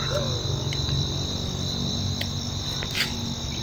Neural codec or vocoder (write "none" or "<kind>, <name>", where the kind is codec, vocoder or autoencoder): none